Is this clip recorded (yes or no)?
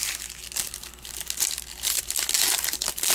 yes